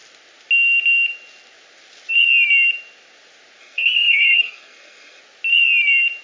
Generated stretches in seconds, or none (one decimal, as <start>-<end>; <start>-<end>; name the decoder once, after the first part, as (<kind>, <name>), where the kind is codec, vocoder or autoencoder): 3.6-5.2 (codec, SNAC)